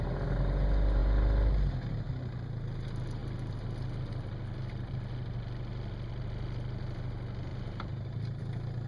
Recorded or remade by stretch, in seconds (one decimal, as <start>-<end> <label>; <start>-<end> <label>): 0.0-7.5 recorded; 7.5-8.4 remade; 8.4-8.9 recorded